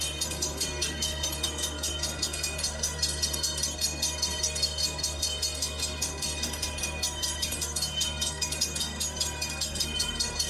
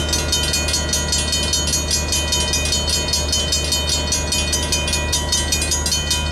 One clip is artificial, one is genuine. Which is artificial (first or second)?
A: first